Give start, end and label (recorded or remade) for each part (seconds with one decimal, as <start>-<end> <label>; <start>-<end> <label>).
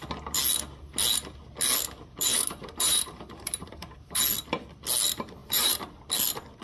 0.0-2.3 recorded; 2.3-4.2 remade; 4.2-5.4 recorded; 5.4-6.0 remade; 6.0-6.6 recorded